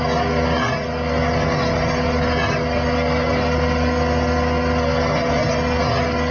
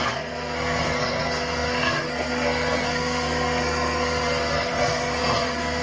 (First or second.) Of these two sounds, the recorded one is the first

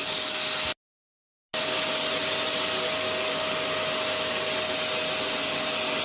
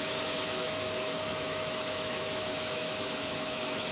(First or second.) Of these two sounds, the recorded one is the first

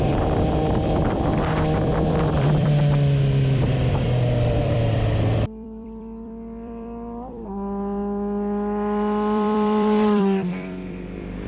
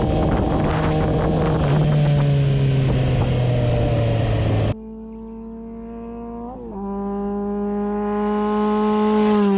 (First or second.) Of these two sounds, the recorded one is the second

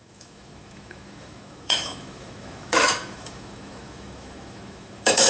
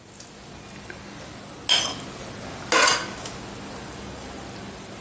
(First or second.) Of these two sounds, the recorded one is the second